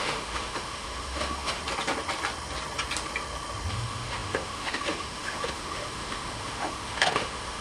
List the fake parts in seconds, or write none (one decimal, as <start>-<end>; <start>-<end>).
0.0-1.6; 3.7-7.6